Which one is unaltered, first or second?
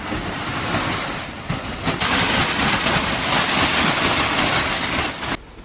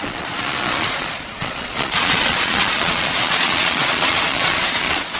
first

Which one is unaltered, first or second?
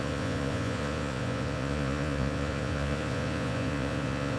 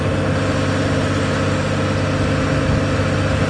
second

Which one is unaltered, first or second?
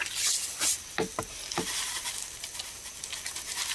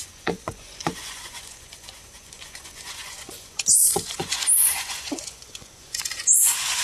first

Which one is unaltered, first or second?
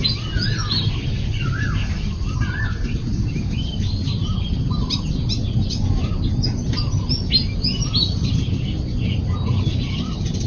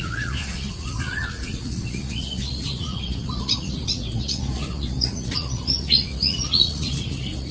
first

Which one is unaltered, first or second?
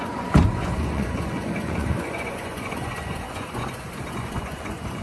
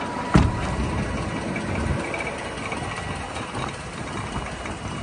second